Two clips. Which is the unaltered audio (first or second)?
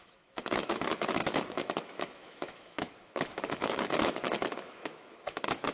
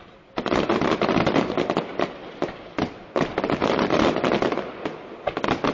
second